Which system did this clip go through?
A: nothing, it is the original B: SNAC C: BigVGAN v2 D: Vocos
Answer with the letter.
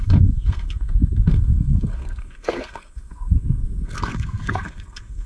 B